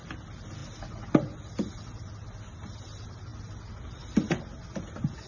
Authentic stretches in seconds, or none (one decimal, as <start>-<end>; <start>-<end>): 0.0-5.3